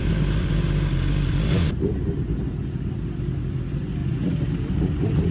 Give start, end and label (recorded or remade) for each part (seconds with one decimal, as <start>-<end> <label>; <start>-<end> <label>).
0.0-5.3 recorded